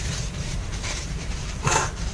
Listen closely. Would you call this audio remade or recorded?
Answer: remade